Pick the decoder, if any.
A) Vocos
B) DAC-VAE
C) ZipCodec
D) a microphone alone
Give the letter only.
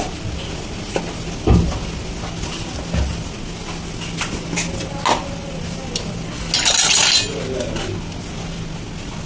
D